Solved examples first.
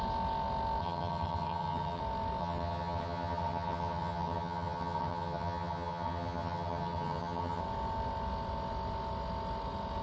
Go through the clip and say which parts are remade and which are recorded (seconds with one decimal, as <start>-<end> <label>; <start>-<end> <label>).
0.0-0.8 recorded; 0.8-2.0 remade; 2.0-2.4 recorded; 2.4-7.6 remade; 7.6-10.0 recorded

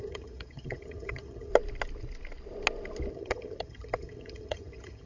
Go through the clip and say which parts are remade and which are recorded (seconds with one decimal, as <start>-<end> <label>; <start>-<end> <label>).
0.0-1.5 remade; 1.5-3.1 recorded; 3.1-5.1 remade

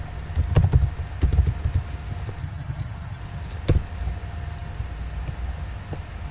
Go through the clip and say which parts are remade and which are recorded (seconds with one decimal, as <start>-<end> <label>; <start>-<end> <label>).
0.0-2.4 recorded; 2.4-3.2 remade; 3.2-6.3 recorded

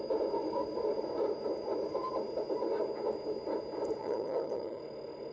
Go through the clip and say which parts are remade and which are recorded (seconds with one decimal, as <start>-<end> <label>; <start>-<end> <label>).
0.0-4.0 recorded; 4.0-4.8 remade; 4.8-5.3 recorded

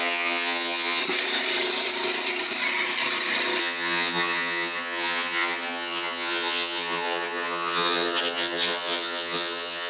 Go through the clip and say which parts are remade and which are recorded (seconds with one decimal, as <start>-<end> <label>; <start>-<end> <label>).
0.0-1.0 remade; 1.0-3.6 recorded; 3.6-9.9 remade

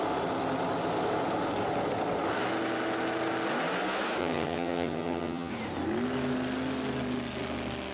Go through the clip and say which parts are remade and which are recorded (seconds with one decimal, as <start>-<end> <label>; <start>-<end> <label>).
0.0-4.2 recorded; 4.2-5.5 remade; 5.5-7.9 recorded

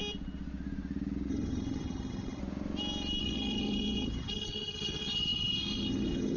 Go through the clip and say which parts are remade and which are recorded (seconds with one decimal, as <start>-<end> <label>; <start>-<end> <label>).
0.0-1.3 recorded; 1.3-2.4 remade; 2.4-3.2 recorded; 3.2-6.4 remade

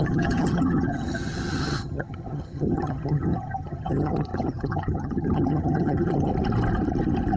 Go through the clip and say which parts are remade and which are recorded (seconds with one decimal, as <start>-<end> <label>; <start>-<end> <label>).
0.0-6.3 remade; 6.3-7.4 recorded